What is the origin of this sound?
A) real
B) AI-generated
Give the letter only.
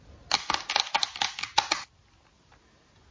A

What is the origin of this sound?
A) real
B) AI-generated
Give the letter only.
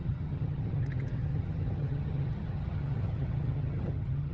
B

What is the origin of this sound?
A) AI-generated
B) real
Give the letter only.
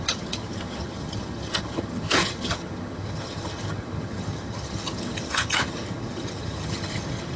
A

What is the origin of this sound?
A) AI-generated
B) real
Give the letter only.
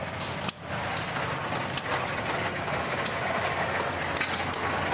B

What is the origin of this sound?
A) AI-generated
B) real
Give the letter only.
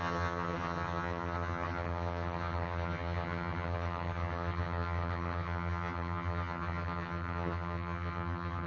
A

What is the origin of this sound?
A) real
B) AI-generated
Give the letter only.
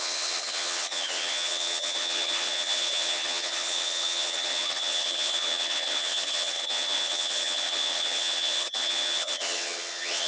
B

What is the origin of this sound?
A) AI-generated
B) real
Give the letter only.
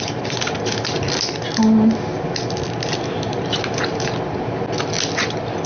B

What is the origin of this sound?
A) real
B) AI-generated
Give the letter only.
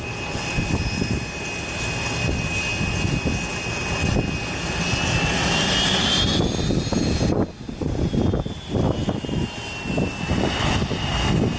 A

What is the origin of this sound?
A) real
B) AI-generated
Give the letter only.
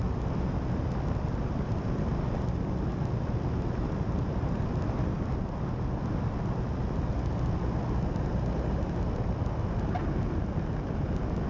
A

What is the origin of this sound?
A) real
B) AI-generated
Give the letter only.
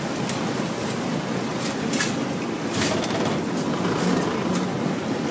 A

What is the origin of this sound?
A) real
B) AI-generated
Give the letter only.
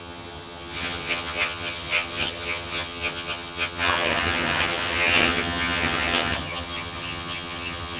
B